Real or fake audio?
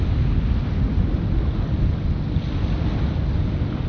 real